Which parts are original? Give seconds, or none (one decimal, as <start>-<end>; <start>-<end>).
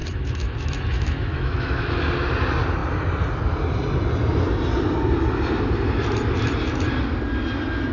2.0-7.9